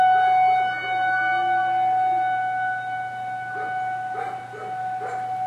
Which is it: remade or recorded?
recorded